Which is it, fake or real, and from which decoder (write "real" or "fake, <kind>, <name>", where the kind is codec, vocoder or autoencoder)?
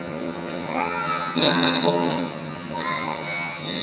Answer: fake, vocoder, HiFi-GAN